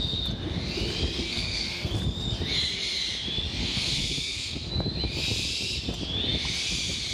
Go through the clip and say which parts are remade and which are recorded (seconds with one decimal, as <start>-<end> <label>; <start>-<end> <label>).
0.0-1.3 recorded; 1.3-1.9 remade; 1.9-3.6 recorded; 3.6-4.7 remade; 4.7-7.1 recorded